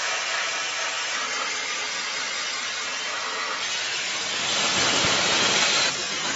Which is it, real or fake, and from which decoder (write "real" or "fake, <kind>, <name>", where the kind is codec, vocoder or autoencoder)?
real